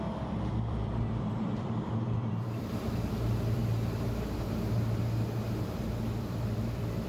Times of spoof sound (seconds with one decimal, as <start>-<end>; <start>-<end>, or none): 0.0-3.6; 6.0-7.1